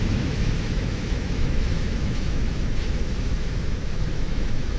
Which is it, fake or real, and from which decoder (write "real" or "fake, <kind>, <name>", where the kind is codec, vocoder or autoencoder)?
fake, autoencoder, DAC-VAE